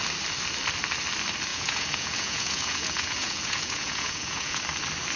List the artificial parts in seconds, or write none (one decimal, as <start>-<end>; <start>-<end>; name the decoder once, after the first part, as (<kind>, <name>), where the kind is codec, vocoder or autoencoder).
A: 1.5-4.6 (vocoder, Vocos)